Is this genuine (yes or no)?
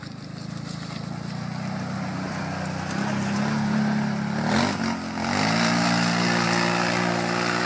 yes